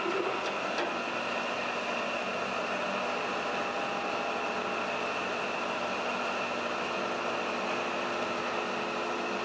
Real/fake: real